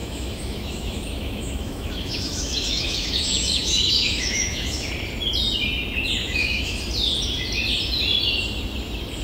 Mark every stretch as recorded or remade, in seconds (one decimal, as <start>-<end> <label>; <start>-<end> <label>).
0.0-4.9 remade; 4.9-6.2 recorded; 6.2-6.8 remade; 6.8-9.2 recorded